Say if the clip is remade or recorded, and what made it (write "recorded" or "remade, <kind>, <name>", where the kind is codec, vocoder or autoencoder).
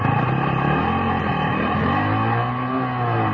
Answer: recorded